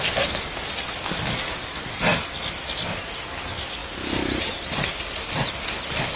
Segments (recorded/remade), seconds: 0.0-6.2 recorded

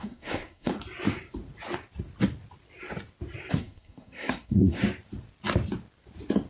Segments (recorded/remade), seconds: 0.0-0.7 remade; 0.7-3.5 recorded; 3.5-4.8 remade; 4.8-6.5 recorded

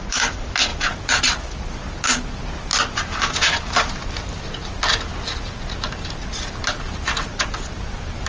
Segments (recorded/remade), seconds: 0.0-0.7 recorded; 0.7-1.9 remade; 1.9-8.3 recorded

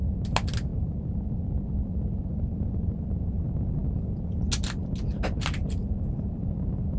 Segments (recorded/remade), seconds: 0.0-7.0 recorded

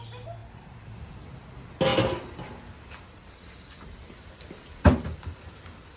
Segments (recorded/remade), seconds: 0.0-0.4 recorded; 0.4-1.2 remade; 1.2-1.9 recorded; 1.9-5.5 remade; 5.5-6.0 recorded

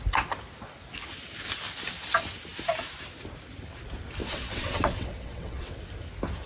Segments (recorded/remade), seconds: 0.0-4.2 recorded; 4.2-5.7 remade; 5.7-6.5 recorded

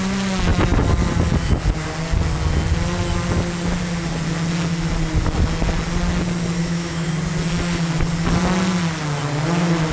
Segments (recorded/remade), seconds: 0.0-6.6 recorded; 6.6-7.1 remade; 7.1-9.9 recorded